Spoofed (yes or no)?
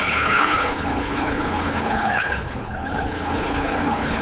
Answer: yes